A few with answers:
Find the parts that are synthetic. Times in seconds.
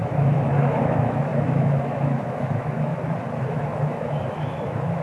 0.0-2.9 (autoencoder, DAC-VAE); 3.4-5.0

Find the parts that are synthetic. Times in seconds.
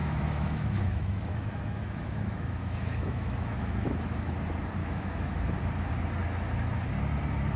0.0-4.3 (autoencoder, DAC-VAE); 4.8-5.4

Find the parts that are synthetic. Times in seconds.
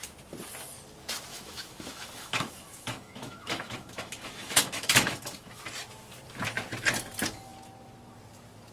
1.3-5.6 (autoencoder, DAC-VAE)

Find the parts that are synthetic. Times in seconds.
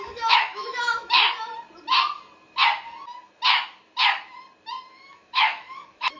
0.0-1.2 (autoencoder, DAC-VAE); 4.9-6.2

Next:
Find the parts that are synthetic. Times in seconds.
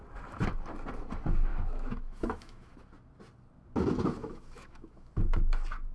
1.5-2.7 (autoencoder, DAC-VAE); 4.2-5.1